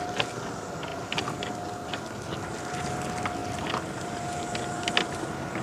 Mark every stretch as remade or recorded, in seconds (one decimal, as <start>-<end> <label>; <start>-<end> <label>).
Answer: 0.0-5.6 recorded